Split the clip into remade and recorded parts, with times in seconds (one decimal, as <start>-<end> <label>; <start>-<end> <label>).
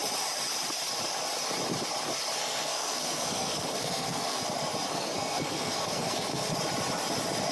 0.0-2.4 recorded; 2.4-4.4 remade; 4.4-4.9 recorded; 4.9-6.5 remade; 6.5-7.5 recorded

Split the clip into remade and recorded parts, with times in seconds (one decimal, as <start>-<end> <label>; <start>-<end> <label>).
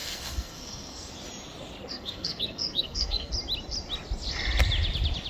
0.0-1.1 remade; 1.1-1.9 recorded; 1.9-3.3 remade; 3.3-5.3 recorded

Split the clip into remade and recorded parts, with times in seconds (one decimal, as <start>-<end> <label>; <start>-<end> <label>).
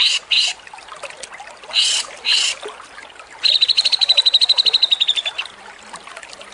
0.0-6.5 recorded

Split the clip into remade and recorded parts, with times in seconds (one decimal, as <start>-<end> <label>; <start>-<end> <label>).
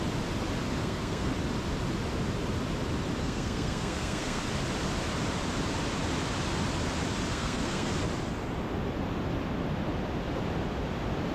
0.0-0.8 recorded; 0.8-1.3 remade; 1.3-3.2 recorded; 3.2-4.4 remade; 4.4-7.3 recorded; 7.3-7.9 remade; 7.9-11.3 recorded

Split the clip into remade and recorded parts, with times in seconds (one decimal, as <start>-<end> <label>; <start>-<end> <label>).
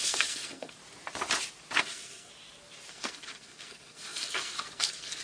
0.0-0.8 remade; 0.8-1.8 recorded; 1.8-2.3 remade; 2.3-2.9 recorded; 2.9-5.2 remade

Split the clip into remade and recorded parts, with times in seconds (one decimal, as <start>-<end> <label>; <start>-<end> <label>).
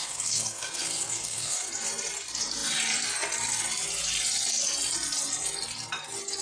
0.0-1.7 remade; 1.7-6.4 recorded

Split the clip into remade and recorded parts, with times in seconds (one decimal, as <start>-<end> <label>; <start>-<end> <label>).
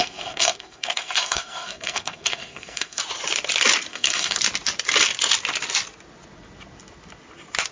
0.0-3.0 remade; 3.0-3.9 recorded; 3.9-4.4 remade; 4.4-7.7 recorded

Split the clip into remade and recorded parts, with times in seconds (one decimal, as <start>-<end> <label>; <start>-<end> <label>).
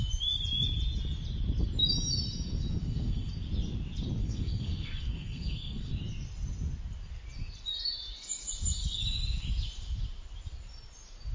0.0-2.8 recorded; 2.8-3.3 remade; 3.3-4.2 recorded; 4.2-5.9 remade; 5.9-11.3 recorded